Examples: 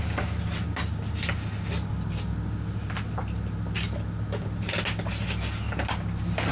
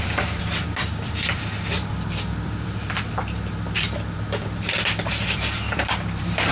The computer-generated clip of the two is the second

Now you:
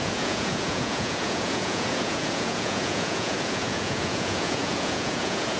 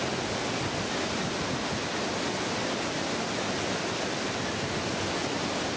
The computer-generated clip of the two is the first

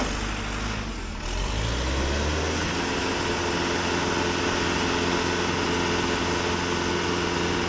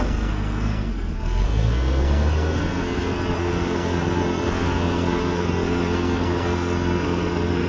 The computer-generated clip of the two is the second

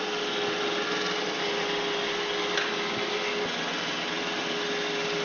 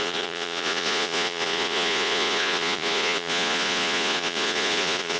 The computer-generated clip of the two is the second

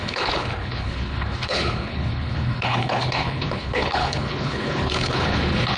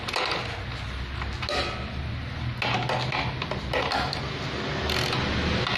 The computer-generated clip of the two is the first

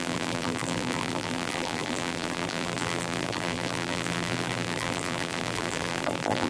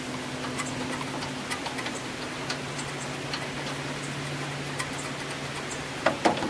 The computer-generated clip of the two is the first